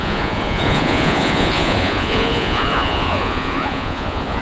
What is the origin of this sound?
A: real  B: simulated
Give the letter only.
B